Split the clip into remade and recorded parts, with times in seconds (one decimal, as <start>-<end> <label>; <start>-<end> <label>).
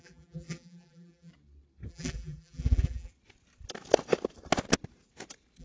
0.0-1.3 remade; 1.3-1.9 recorded; 1.9-3.1 remade; 3.1-5.6 recorded